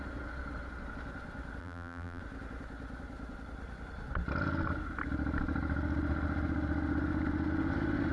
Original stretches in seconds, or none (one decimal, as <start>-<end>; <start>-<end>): 0.0-1.6; 2.2-8.1